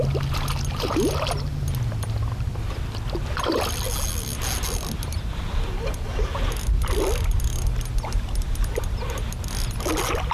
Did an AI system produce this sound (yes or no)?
no